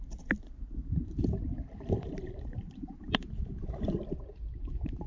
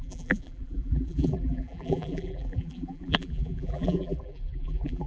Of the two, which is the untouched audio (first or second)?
first